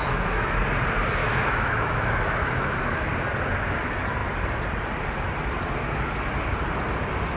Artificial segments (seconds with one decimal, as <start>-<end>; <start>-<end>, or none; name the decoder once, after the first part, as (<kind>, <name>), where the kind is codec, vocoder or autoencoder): 0.0-0.5 (autoencoder, DAC-VAE); 1.2-3.1